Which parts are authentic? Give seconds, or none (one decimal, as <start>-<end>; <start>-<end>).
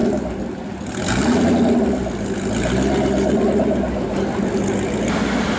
0.0-5.6